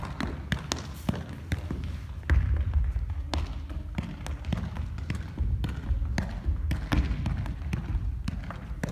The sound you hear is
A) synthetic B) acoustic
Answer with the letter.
B